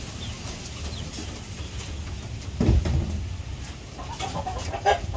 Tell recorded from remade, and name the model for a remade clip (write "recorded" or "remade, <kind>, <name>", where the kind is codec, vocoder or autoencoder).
recorded